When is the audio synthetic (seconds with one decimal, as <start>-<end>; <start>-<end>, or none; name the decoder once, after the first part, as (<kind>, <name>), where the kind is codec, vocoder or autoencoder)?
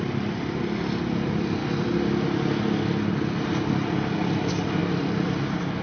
none